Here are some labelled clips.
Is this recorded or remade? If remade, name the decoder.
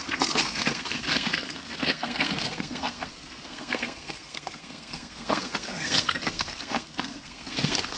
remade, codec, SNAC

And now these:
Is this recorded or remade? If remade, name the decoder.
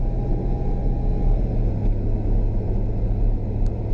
recorded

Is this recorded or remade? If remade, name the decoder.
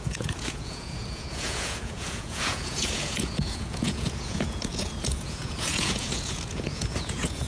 remade, vocoder, Vocos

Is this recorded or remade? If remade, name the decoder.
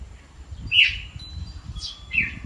remade, vocoder, BigVGAN v2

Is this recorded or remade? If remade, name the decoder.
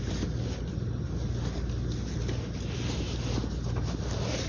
recorded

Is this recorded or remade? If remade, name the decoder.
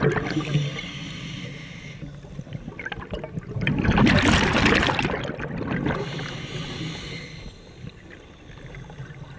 recorded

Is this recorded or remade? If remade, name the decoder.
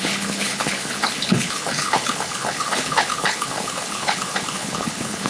remade, codec, HILCodec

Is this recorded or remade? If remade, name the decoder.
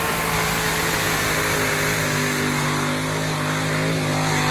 recorded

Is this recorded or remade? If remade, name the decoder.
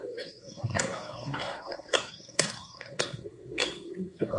remade, codec, SNAC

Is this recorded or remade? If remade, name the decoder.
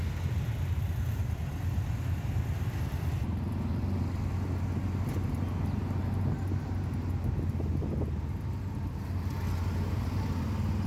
recorded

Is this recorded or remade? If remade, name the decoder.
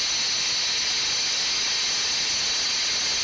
recorded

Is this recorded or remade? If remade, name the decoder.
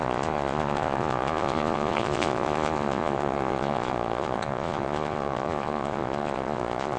remade, vocoder, Vocos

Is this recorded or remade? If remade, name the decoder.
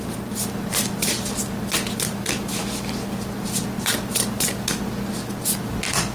recorded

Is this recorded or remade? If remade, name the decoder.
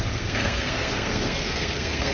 remade, codec, SNAC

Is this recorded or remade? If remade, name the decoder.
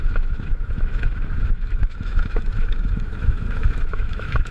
remade, autoencoder, DAC-VAE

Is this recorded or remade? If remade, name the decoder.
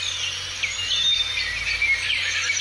recorded